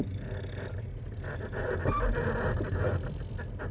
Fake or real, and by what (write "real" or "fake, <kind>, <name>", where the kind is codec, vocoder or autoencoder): real